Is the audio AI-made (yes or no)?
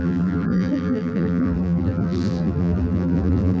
yes